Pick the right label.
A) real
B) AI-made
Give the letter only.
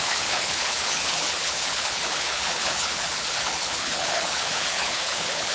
B